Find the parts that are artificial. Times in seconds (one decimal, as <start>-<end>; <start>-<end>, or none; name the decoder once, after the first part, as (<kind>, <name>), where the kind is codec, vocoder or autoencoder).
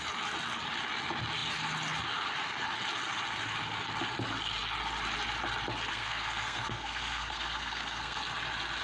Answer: 5.9-8.2 (codec, SNAC)